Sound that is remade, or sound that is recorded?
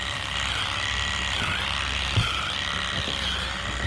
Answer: recorded